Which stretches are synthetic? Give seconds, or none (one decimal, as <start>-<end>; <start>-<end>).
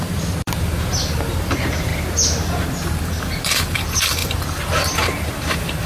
0.0-1.9; 2.4-5.9